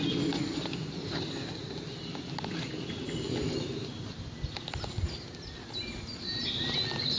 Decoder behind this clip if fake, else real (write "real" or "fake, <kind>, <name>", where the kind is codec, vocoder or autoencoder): real